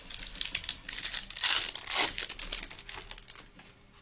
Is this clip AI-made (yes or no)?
no